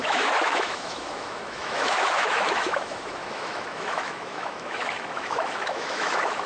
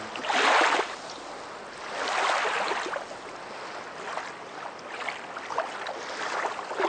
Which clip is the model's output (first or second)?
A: first